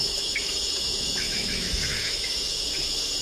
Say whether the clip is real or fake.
fake